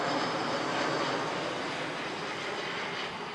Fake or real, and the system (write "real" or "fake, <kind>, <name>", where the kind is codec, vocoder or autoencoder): real